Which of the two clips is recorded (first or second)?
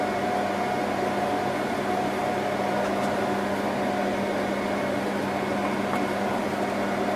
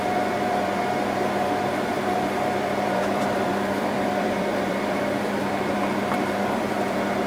first